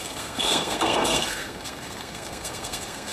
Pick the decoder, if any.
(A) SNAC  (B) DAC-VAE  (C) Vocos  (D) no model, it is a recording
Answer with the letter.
A